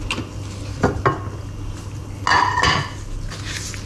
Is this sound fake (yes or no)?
no